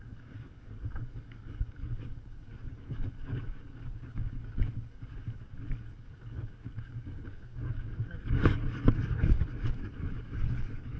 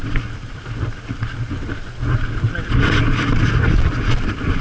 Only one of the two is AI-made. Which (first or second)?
first